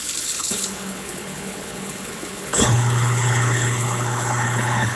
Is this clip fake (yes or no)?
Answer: yes